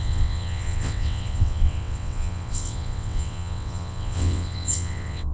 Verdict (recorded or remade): remade